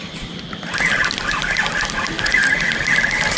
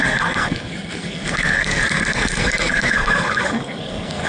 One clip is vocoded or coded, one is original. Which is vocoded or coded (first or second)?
second